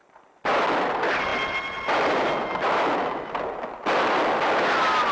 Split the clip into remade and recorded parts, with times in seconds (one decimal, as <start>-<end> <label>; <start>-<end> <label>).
0.0-5.1 recorded